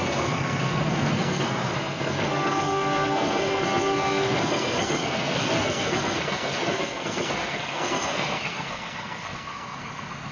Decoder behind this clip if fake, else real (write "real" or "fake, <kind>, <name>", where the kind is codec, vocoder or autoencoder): fake, codec, SNAC